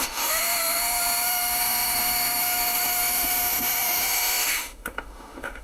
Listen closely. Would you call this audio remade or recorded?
remade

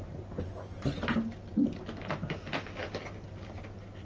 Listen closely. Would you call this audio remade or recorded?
recorded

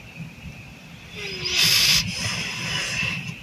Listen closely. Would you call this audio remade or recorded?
recorded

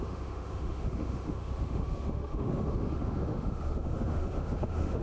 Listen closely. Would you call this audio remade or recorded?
remade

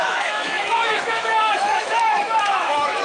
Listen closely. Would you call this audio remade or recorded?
remade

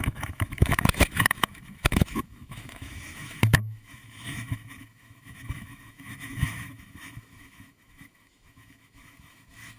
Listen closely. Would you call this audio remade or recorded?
remade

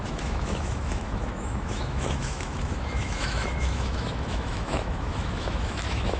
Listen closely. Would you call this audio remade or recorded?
remade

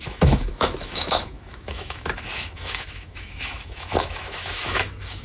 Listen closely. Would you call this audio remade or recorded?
remade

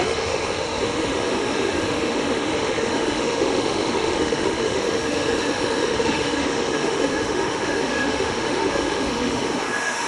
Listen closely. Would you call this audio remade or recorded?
remade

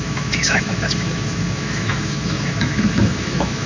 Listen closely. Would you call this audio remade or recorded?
remade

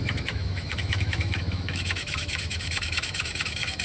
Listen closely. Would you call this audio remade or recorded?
remade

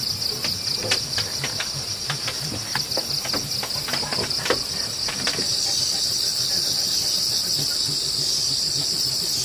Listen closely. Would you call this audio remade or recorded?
recorded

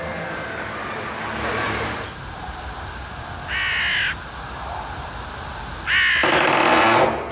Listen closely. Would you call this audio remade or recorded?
recorded